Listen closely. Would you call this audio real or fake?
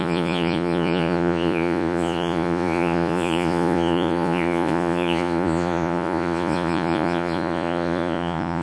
fake